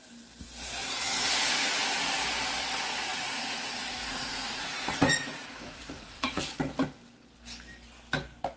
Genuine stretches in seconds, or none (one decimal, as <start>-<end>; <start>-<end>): 0.0-3.1; 6.4-8.6